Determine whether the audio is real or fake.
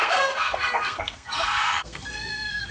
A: fake